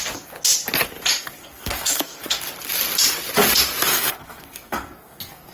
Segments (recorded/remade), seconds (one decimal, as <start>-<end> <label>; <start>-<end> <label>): 0.0-1.4 recorded; 1.4-2.4 remade; 2.4-3.9 recorded; 3.9-5.5 remade